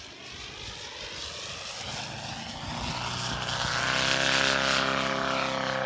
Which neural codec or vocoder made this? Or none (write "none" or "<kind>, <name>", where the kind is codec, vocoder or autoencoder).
none